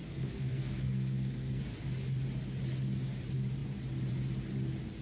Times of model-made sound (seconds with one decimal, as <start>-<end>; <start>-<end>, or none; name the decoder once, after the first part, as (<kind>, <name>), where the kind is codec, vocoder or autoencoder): 0.0-1.6 (codec, SNAC)